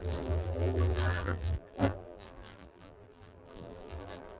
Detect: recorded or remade remade